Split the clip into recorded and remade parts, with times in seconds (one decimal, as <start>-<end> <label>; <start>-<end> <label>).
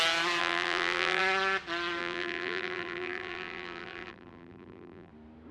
0.0-0.4 recorded; 0.4-1.2 remade; 1.2-2.0 recorded; 2.0-5.1 remade; 5.1-5.5 recorded